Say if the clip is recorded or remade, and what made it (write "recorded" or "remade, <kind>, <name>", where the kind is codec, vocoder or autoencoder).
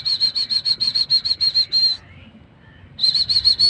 recorded